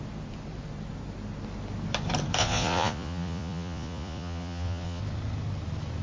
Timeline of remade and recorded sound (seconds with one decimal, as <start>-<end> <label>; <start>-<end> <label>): 0.0-2.4 recorded; 2.4-5.0 remade; 5.0-6.0 recorded